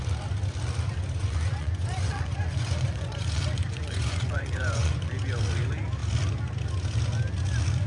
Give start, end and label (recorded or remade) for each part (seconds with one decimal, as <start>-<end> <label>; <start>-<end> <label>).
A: 0.0-1.2 recorded; 1.2-5.1 remade; 5.1-7.9 recorded